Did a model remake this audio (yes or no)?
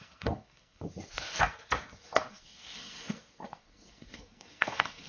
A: yes